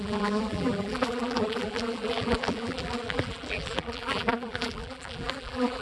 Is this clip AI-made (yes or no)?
yes